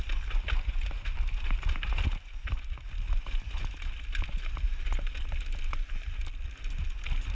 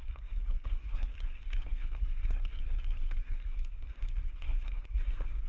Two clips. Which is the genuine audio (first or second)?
first